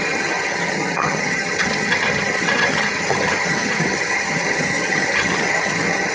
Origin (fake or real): fake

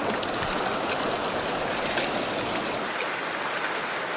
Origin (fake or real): real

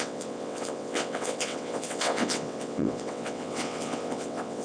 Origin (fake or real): fake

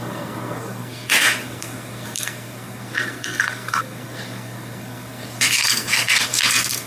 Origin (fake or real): fake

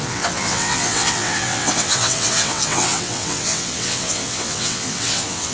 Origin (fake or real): fake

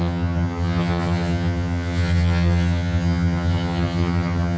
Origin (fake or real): fake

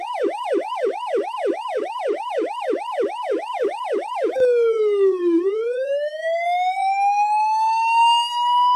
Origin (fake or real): fake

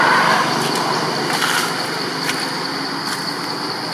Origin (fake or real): real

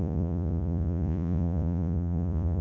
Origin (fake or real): fake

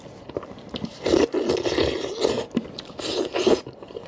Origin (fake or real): real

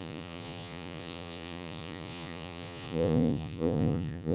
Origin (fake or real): fake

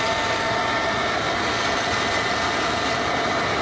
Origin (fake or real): real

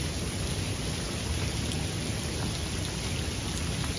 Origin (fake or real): real